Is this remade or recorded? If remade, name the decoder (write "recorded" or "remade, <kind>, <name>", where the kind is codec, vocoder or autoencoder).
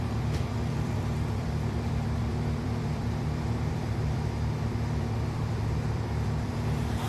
remade, vocoder, BigVGAN v2